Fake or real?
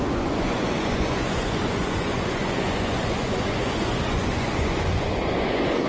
fake